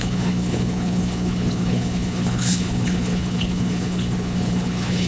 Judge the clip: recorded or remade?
remade